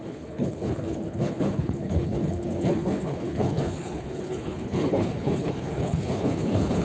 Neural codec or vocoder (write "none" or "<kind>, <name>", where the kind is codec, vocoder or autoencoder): codec, HILCodec